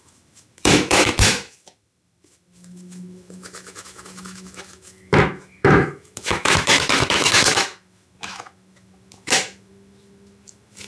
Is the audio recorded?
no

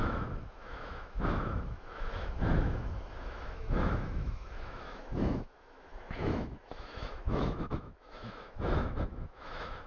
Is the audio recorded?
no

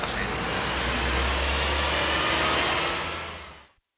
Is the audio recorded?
yes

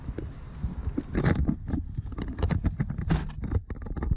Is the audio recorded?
yes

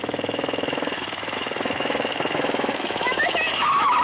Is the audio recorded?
no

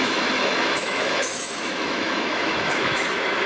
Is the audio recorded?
no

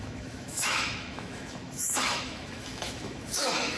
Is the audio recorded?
no